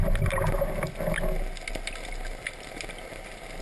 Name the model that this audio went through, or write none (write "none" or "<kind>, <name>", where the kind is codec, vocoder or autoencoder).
none